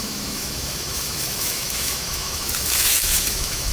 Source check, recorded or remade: remade